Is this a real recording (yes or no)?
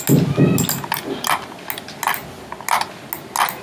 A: yes